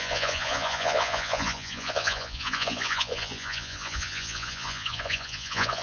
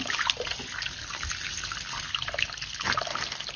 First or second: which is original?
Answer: second